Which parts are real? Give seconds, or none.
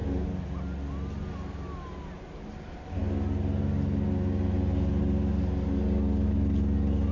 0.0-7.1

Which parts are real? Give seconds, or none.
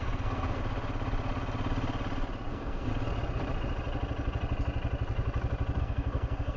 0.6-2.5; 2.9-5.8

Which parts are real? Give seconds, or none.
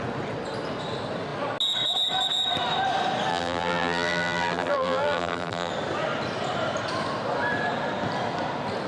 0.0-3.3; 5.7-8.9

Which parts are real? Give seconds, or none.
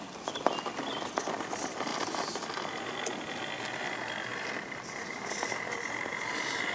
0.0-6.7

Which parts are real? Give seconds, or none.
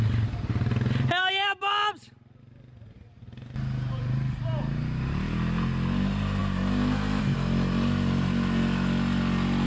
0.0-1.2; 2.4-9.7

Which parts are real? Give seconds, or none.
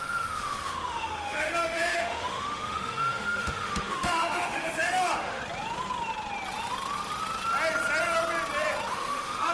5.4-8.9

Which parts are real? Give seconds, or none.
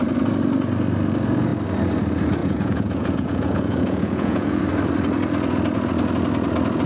0.0-2.4; 4.6-6.9